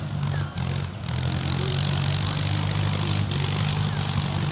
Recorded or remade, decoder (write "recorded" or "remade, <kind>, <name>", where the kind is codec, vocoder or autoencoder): recorded